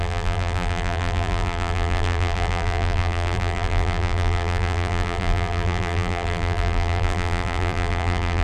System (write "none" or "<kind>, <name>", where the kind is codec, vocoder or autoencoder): vocoder, BigVGAN v2